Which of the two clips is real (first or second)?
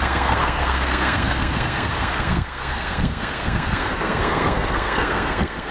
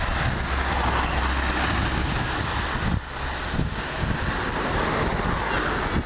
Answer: second